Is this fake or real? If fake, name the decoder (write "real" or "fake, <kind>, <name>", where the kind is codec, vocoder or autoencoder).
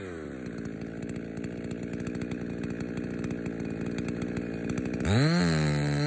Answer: real